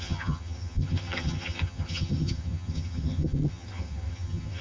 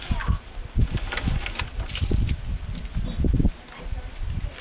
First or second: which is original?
second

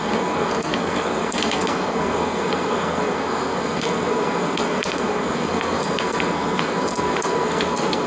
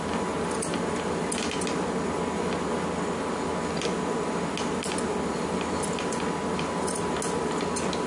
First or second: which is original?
second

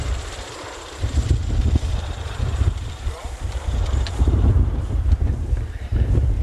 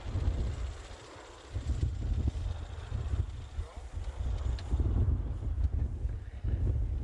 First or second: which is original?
second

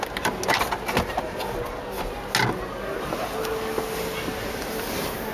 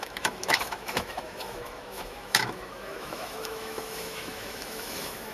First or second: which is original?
first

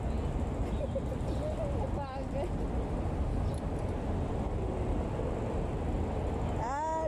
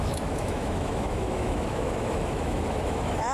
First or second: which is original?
first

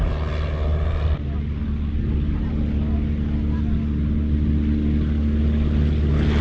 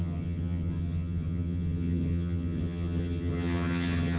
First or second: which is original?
first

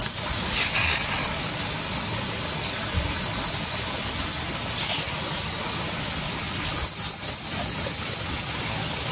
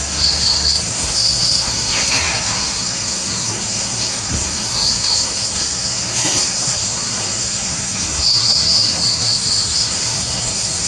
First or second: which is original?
first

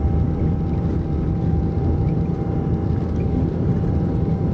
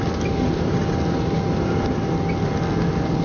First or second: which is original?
second